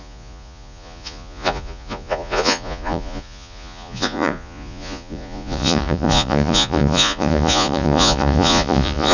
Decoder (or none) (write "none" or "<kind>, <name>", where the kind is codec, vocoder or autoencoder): vocoder, Vocos